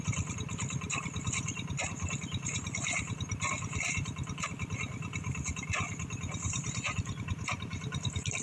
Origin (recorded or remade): recorded